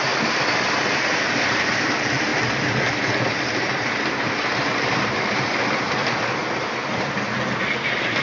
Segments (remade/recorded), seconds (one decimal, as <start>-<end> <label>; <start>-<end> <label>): 0.0-1.7 remade; 1.7-8.2 recorded